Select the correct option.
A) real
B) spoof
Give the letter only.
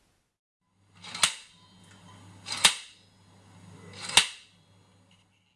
A